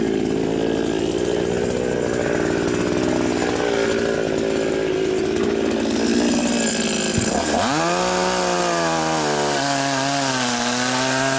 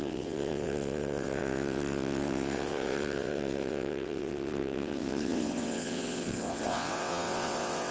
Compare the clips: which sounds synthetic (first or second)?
second